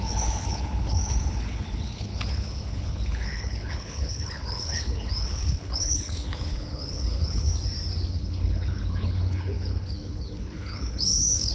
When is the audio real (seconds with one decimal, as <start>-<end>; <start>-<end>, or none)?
7.5-8.1